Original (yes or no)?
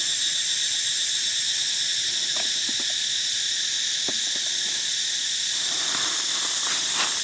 yes